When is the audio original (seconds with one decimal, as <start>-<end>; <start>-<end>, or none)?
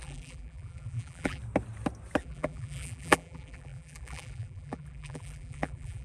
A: 1.4-2.2